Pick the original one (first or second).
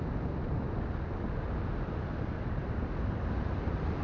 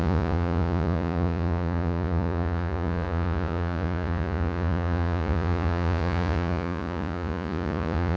first